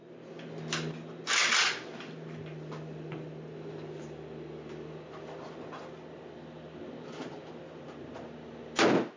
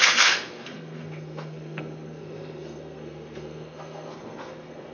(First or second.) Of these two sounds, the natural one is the first